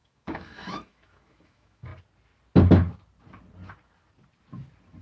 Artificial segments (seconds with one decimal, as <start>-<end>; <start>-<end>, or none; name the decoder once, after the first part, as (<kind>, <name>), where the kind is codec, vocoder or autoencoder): 0.0-1.9 (autoencoder, DAC-VAE)